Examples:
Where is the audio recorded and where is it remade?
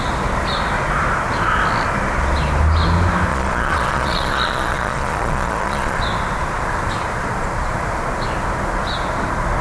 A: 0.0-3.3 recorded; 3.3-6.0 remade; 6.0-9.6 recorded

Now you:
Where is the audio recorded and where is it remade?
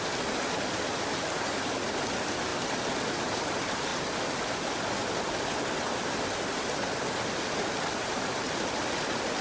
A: 0.0-9.4 recorded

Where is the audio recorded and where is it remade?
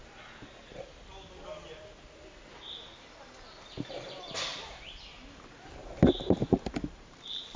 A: 0.0-5.8 recorded; 5.8-7.6 remade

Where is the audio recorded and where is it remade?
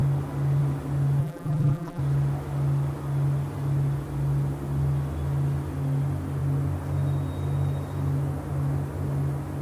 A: 0.0-1.2 recorded; 1.2-2.0 remade; 2.0-9.6 recorded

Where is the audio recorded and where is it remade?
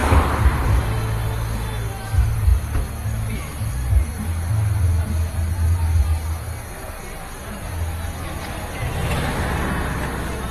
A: 0.0-10.5 recorded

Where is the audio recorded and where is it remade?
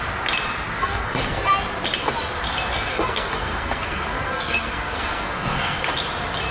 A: 0.0-0.8 recorded; 0.8-1.5 remade; 1.5-2.9 recorded; 2.9-5.8 remade; 5.8-6.5 recorded